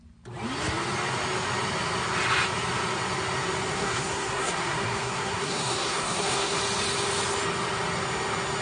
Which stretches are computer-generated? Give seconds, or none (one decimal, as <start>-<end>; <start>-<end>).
3.7-6.6